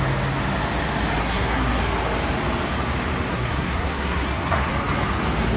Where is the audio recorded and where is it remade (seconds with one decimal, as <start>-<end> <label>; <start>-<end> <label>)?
0.0-1.2 recorded; 1.2-1.8 remade; 1.8-3.3 recorded; 3.3-4.7 remade; 4.7-5.6 recorded